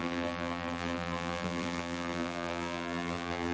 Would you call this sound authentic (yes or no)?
no